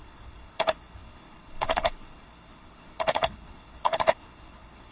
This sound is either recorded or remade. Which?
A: remade